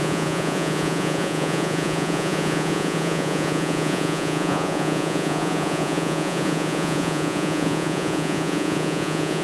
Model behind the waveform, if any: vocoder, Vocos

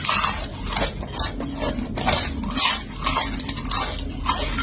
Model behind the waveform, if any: none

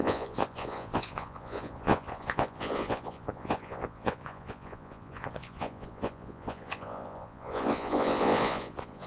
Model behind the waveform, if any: vocoder, Vocos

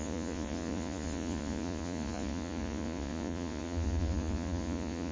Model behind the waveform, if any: vocoder, Vocos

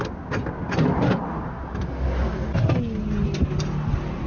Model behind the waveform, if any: none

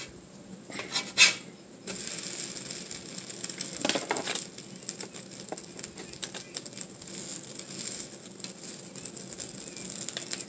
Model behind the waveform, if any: none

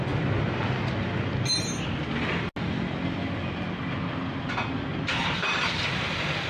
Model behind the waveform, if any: none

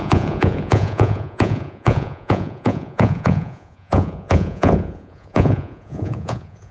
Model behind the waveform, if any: vocoder, Vocos